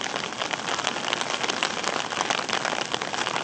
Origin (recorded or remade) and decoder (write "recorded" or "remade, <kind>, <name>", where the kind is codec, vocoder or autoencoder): recorded